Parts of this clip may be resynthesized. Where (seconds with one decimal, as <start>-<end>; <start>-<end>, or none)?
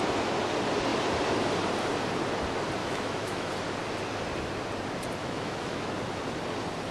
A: 2.8-3.5; 5.2-5.9